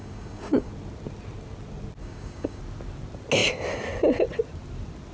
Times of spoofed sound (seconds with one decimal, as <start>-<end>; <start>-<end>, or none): 0.0-0.7; 2.0-2.6